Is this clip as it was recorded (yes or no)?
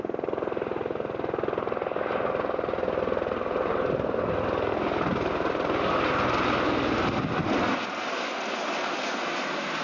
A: yes